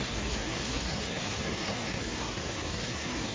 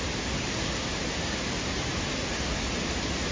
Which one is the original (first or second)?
second